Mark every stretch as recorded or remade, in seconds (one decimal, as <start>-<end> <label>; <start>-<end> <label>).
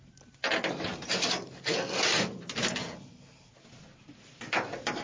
0.0-5.0 recorded